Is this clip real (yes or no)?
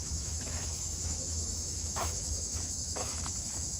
no